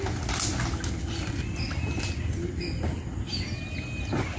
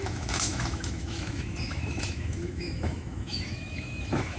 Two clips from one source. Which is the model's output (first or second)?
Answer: second